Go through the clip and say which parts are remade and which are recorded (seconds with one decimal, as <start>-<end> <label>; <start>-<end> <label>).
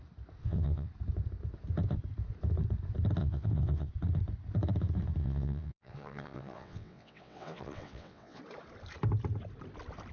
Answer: 0.0-0.4 recorded; 0.4-0.9 remade; 0.9-3.2 recorded; 3.2-3.9 remade; 3.9-5.2 recorded; 5.2-8.4 remade; 8.4-10.1 recorded